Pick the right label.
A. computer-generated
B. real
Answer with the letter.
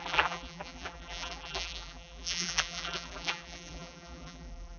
A